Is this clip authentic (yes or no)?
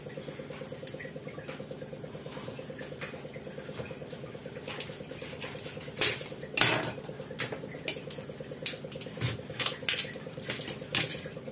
yes